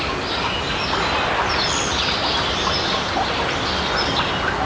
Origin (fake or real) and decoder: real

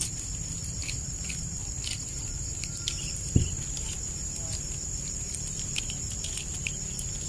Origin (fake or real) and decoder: real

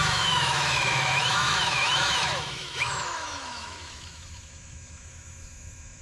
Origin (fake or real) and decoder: fake, autoencoder, DAC-VAE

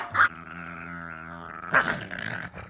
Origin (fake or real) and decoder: real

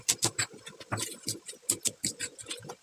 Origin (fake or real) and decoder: real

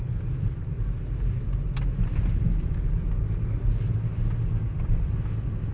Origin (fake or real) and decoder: real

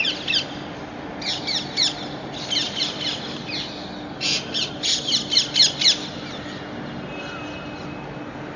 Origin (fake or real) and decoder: real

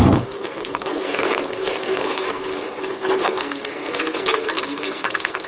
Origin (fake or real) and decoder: fake, codec, SNAC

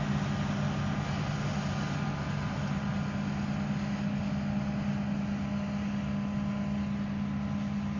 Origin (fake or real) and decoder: real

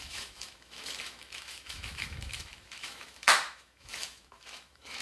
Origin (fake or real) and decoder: fake, autoencoder, DAC-VAE